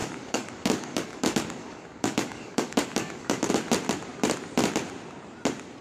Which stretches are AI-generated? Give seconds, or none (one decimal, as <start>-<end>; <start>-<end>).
0.0-3.5